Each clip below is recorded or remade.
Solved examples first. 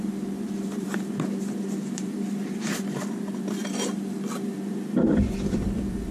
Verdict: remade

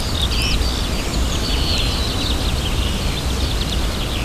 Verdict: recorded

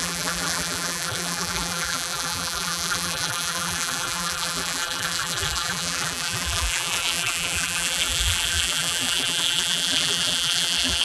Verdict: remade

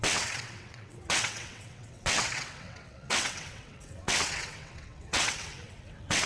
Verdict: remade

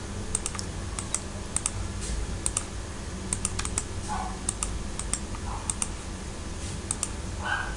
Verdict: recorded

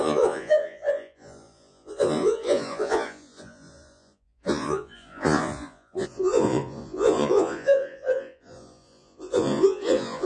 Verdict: remade